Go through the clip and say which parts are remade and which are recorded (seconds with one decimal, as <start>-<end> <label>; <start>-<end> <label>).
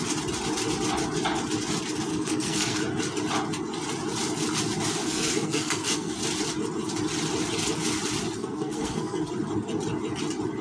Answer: 0.0-2.1 recorded; 2.1-2.8 remade; 2.8-5.0 recorded; 5.0-6.1 remade; 6.1-8.4 recorded; 8.4-9.2 remade; 9.2-10.6 recorded